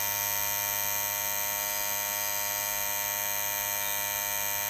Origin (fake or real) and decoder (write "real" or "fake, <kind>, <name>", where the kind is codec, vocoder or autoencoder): real